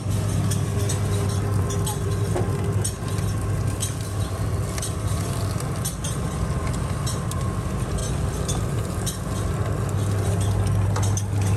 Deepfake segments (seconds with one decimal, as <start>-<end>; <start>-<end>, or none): none